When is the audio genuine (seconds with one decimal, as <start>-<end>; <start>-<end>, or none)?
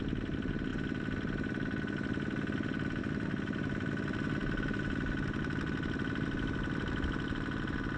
0.0-8.0